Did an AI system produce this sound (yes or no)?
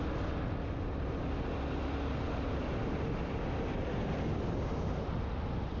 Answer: no